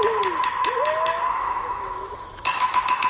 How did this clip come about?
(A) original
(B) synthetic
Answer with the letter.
B